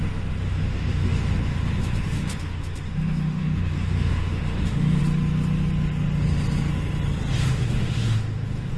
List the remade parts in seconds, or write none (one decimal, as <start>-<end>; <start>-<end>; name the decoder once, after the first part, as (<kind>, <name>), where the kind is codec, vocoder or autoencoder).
0.0-5.0 (autoencoder, DAC-VAE); 7.3-8.8